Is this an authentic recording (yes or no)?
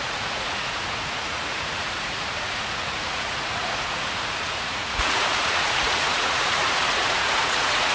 no